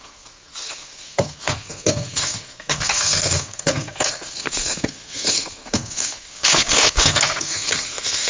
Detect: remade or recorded remade